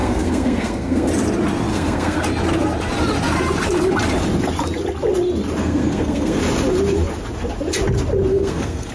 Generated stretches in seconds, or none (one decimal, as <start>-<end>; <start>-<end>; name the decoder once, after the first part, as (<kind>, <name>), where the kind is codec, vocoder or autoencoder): 0.0-1.1 (codec, SNAC); 1.7-2.2; 5.6-6.4; 8.3-8.9